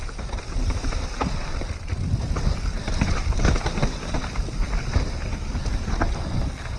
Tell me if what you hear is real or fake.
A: fake